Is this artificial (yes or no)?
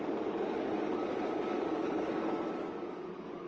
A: yes